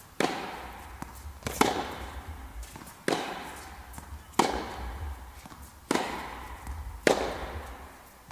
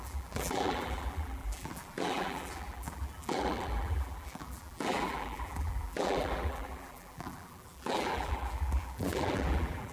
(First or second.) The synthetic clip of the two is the second